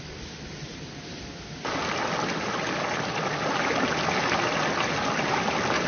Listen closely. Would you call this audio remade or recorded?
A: recorded